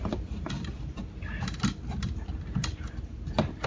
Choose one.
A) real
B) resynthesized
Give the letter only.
B